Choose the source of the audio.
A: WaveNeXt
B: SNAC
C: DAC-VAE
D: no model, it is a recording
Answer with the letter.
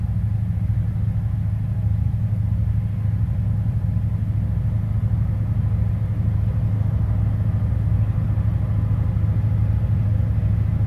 D